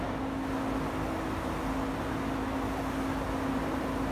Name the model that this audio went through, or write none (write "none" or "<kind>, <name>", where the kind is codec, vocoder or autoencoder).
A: none